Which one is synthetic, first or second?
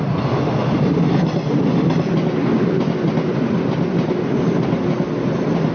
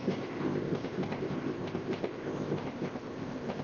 second